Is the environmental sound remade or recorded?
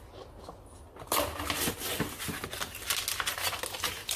recorded